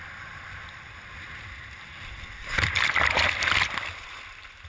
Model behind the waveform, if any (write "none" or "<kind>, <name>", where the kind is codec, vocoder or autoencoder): vocoder, BigVGAN v2